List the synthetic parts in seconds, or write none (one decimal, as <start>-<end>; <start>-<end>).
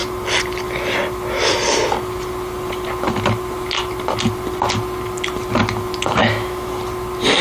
6.2-6.7